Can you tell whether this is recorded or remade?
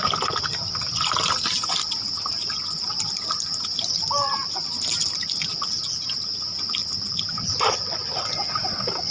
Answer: remade